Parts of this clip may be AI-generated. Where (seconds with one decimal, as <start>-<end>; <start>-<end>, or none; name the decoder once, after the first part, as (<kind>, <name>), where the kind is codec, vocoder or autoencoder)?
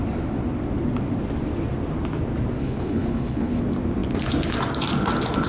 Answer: 2.6-3.6 (codec, HILCodec)